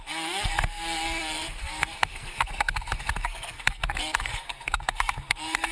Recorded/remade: remade